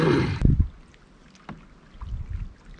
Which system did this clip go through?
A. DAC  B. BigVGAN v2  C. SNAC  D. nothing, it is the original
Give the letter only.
D